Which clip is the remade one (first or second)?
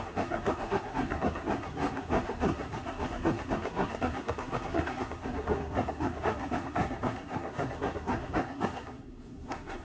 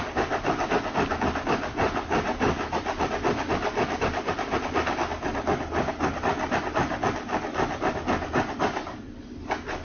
first